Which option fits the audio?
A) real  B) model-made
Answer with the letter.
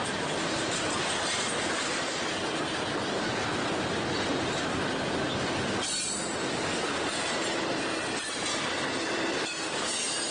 A